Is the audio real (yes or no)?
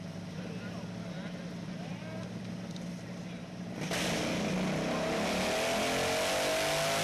yes